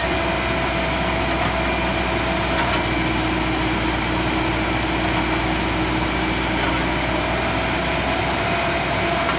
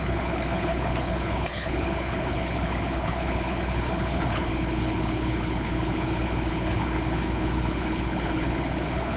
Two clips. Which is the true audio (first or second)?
first